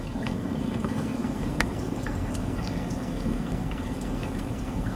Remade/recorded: remade